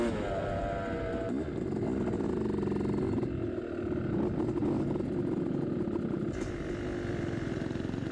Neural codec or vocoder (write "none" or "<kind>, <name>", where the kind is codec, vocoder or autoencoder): none